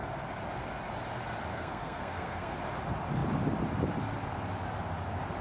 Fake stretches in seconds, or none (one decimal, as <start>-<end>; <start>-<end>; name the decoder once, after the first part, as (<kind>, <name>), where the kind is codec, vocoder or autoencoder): 1.5-2.5 (codec, SNAC)